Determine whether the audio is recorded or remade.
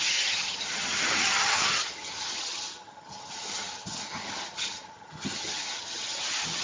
remade